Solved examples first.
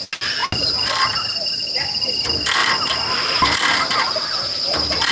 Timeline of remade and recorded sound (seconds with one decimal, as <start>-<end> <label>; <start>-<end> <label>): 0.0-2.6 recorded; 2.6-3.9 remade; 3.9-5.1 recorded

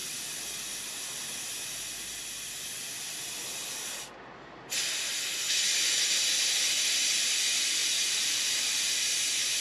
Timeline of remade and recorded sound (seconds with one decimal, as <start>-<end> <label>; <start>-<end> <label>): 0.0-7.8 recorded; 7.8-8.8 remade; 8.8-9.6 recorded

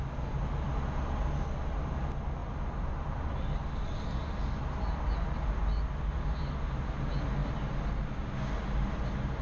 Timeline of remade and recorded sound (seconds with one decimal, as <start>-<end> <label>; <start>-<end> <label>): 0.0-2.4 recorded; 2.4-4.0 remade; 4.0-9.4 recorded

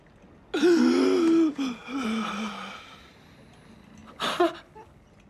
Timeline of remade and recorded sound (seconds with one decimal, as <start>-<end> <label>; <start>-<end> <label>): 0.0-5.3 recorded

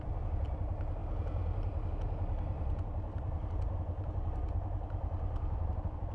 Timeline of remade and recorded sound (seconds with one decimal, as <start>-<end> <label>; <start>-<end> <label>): 0.0-6.1 recorded

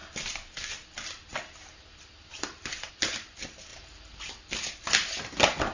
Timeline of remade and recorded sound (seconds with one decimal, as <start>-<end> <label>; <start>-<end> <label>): 0.0-3.7 recorded; 3.7-4.3 remade; 4.3-5.7 recorded